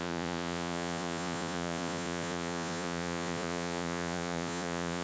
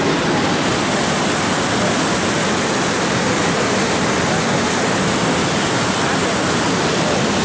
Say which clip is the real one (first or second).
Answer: second